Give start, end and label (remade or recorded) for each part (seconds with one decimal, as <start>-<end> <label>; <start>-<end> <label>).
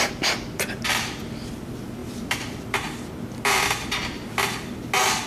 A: 0.0-5.3 recorded